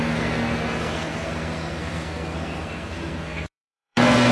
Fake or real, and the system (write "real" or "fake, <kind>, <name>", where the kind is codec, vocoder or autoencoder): fake, codec, SNAC